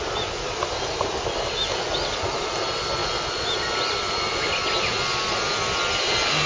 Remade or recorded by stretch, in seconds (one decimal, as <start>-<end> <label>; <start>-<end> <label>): 0.0-3.0 recorded; 3.0-4.5 remade; 4.5-6.5 recorded